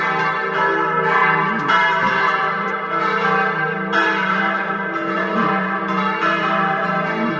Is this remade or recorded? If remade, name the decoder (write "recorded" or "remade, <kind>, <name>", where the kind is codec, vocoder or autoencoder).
remade, vocoder, BigVGAN v2